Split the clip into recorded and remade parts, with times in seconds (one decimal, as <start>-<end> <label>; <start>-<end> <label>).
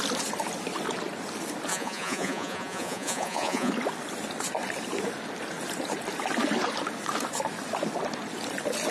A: 0.0-1.7 recorded; 1.7-3.7 remade; 3.7-8.9 recorded